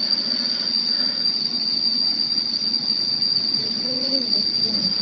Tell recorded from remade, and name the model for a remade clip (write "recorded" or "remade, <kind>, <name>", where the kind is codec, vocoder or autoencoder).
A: remade, vocoder, Vocos